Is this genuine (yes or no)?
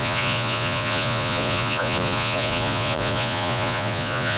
no